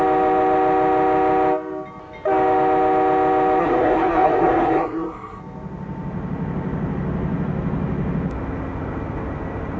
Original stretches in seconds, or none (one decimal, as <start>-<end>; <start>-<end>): 0.0-3.6; 5.4-9.8